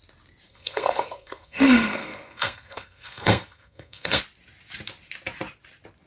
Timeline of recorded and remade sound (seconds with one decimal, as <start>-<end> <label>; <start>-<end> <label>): 0.0-0.5 recorded; 0.5-4.2 remade; 4.2-6.1 recorded